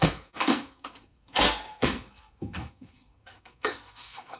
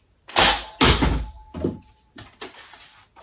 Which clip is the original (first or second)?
second